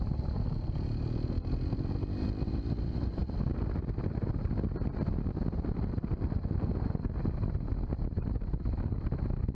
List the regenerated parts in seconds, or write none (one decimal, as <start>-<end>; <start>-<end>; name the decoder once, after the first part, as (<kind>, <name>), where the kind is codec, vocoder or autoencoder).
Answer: none